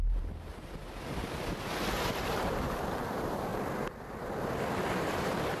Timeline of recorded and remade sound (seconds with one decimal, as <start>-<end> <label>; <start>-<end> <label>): 0.0-0.5 remade; 0.5-1.1 recorded; 1.1-3.5 remade; 3.5-5.0 recorded; 5.0-5.6 remade